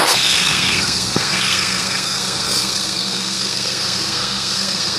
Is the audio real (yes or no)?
no